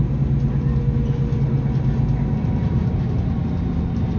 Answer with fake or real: real